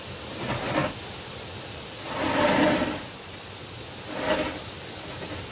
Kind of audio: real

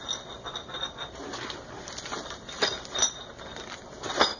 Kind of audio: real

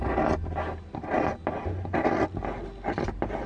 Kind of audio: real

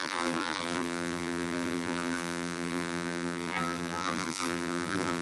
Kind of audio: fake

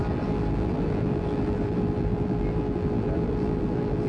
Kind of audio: fake